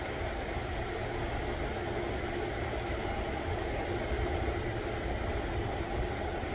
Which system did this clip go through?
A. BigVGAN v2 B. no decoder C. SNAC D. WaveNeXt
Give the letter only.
B